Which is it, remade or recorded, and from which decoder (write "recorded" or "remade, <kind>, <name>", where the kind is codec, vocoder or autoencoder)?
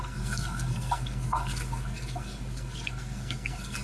remade, codec, SNAC